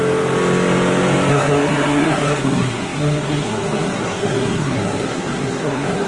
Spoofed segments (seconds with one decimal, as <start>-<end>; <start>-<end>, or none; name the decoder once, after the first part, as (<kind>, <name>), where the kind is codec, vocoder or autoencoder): 1.3-6.1 (codec, SNAC)